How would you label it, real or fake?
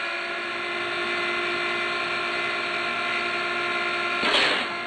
real